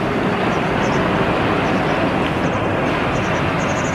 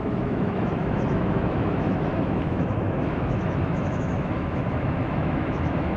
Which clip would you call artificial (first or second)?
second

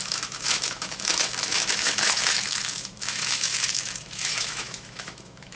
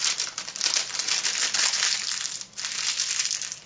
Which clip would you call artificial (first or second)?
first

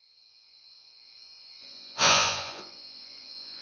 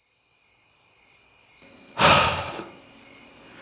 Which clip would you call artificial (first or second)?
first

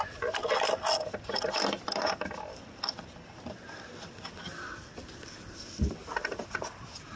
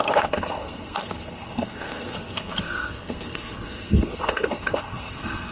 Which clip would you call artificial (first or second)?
second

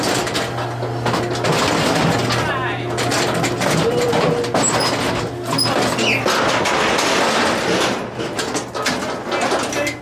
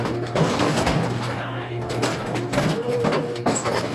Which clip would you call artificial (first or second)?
second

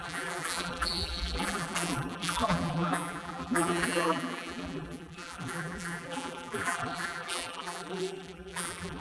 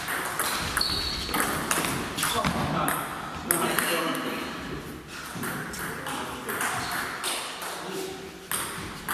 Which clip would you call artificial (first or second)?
first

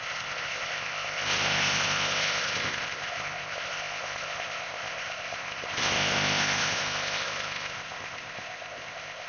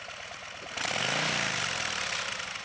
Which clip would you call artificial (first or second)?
first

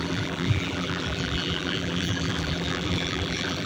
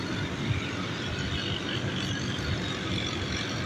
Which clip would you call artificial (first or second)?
first